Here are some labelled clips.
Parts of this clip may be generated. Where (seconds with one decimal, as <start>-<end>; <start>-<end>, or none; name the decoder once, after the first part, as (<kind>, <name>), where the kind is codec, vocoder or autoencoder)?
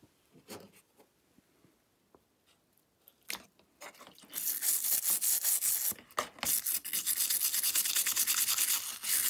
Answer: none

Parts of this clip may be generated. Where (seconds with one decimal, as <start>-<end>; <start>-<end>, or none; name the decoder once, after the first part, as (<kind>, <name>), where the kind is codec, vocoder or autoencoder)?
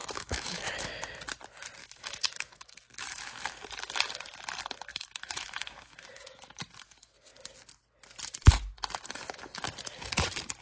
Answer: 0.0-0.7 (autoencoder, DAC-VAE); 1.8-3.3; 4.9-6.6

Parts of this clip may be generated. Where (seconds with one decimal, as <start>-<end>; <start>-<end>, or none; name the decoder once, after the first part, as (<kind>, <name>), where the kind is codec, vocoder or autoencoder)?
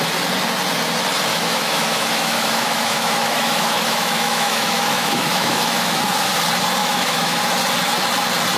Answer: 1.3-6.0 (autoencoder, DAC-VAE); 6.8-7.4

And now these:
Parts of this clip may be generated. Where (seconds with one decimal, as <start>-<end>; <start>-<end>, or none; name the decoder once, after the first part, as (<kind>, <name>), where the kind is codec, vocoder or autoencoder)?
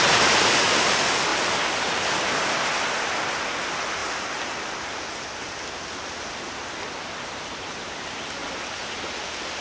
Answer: none